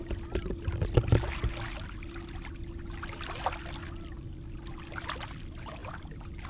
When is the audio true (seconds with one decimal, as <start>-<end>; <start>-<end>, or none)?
0.0-6.5